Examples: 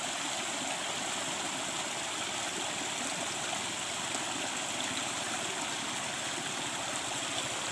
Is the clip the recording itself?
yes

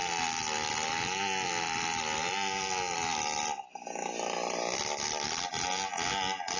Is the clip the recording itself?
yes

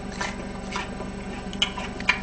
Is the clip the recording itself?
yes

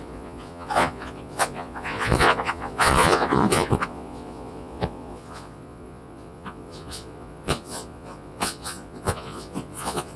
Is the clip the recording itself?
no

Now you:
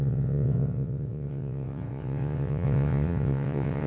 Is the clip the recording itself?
no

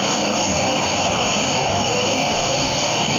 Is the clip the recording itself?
no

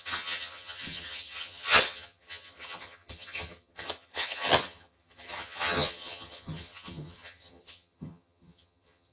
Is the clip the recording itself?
no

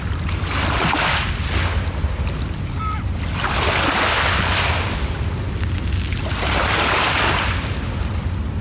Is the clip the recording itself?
yes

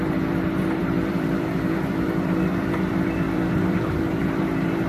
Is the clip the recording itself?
no